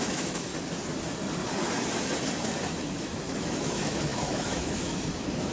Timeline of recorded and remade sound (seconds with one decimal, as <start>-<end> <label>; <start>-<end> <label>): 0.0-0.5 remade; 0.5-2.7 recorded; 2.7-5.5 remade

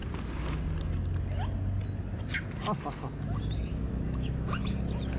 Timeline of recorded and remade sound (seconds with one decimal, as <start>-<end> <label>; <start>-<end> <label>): 0.0-3.7 recorded; 3.7-4.6 remade; 4.6-5.2 recorded

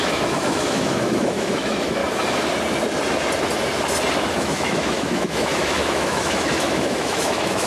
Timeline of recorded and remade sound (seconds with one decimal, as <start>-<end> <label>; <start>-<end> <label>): 0.0-2.0 remade; 2.0-4.2 recorded; 4.2-7.7 remade

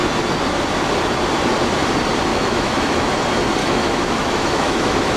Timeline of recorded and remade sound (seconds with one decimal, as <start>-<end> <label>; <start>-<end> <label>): 0.0-2.3 recorded; 2.3-3.1 remade; 3.1-3.6 recorded; 3.6-5.2 remade